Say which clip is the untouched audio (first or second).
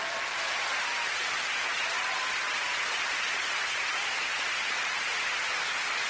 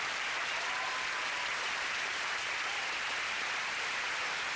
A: first